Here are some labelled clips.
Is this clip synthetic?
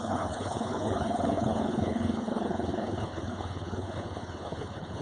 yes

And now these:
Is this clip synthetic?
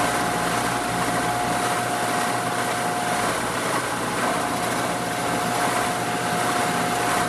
no